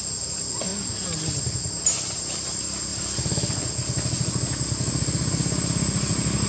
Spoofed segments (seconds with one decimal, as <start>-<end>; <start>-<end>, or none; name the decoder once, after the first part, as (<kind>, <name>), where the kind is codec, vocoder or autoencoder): none